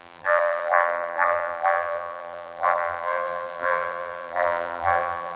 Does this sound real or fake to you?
fake